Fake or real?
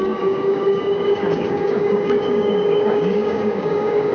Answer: fake